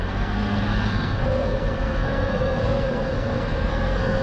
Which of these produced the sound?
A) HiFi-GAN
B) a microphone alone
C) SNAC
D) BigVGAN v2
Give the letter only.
C